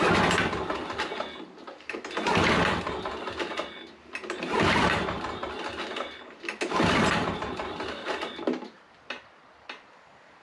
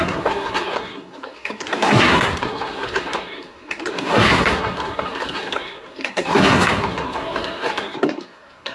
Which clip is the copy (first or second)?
second